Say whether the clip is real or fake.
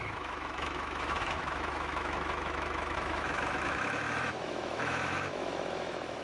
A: fake